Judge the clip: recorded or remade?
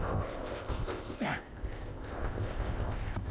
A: remade